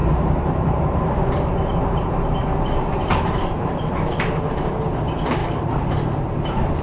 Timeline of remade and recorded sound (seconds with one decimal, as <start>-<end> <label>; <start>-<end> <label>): 0.0-6.8 remade